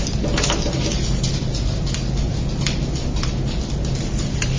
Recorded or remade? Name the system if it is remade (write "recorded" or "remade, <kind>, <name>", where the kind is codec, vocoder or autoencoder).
recorded